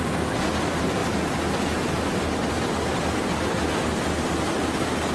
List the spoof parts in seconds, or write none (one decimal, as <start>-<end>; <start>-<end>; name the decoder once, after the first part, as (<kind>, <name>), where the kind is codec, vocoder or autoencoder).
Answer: none